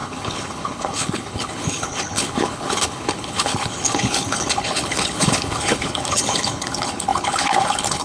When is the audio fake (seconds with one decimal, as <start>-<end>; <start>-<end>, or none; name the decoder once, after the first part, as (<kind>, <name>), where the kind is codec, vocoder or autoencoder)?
0.0-8.0 (codec, HILCodec)